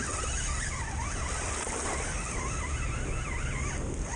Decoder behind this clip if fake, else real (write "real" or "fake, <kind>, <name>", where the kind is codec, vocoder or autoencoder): real